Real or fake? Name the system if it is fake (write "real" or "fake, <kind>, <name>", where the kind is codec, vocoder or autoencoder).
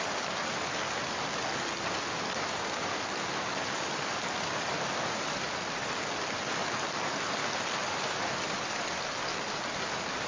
real